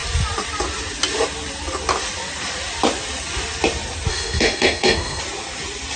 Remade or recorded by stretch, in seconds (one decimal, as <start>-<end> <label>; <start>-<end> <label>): 0.0-4.1 recorded; 4.1-5.2 remade; 5.2-6.0 recorded